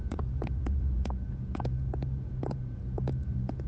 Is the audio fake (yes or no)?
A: yes